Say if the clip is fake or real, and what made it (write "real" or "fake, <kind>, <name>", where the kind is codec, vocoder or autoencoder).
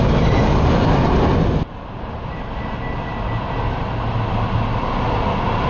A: real